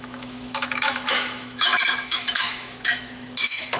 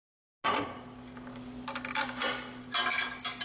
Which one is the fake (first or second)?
first